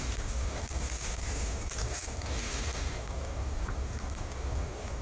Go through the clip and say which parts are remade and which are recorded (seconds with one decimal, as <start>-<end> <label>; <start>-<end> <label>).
0.0-5.0 remade